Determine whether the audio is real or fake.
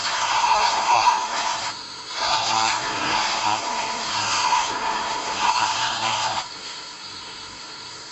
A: fake